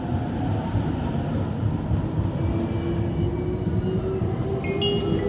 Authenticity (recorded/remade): recorded